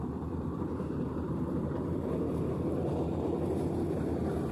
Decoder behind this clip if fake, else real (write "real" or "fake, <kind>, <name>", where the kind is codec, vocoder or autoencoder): fake, vocoder, BigVGAN v2